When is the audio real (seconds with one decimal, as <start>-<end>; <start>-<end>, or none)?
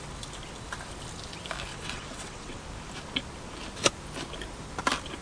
0.0-1.7; 2.6-5.2